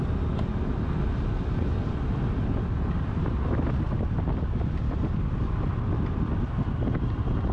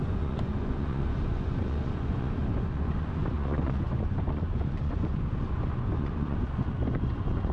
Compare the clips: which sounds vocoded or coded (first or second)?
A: second